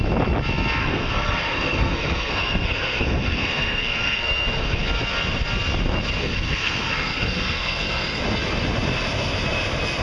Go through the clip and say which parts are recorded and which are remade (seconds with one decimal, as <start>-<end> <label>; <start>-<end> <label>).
0.0-0.8 recorded; 0.8-4.8 remade; 4.8-6.2 recorded; 6.2-8.2 remade; 8.2-10.0 recorded